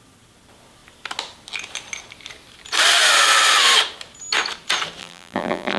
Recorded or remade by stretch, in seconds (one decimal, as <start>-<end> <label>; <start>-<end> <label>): 0.0-5.0 recorded; 5.0-5.8 remade